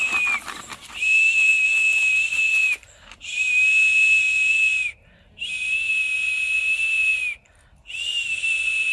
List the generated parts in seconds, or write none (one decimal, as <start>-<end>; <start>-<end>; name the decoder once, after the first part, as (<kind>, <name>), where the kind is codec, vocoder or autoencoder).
none